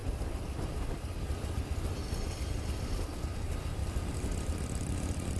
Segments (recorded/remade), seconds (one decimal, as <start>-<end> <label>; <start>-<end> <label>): 0.0-5.4 recorded